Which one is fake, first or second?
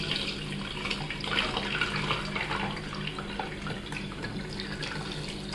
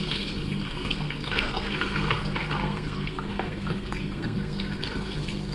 second